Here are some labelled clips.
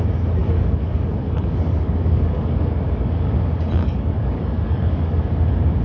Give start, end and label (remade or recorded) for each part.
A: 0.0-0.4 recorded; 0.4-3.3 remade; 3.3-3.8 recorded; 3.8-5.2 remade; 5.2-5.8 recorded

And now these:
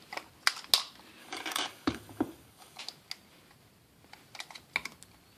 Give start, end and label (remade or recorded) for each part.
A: 0.0-1.2 recorded; 1.2-2.8 remade; 2.8-5.4 recorded

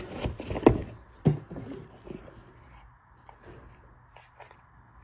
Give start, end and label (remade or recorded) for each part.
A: 0.0-5.0 recorded